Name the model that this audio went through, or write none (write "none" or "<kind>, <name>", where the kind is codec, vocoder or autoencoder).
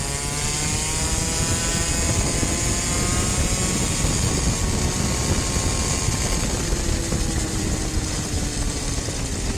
none